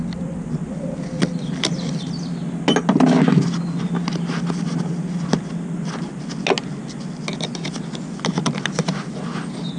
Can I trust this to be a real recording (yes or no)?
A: yes